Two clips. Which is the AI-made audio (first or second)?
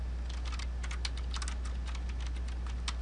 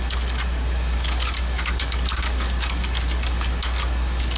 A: second